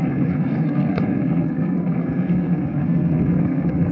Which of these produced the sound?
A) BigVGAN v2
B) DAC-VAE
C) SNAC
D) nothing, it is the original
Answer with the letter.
C